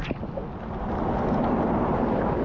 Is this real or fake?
real